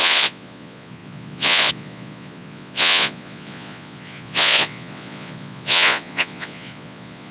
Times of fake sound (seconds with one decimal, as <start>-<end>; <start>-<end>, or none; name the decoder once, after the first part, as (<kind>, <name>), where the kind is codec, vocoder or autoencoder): 0.0-7.3 (vocoder, Vocos)